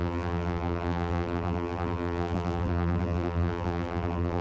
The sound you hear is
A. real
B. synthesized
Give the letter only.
B